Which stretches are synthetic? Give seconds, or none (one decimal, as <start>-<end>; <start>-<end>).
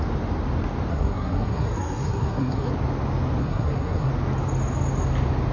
0.9-2.7; 3.4-4.1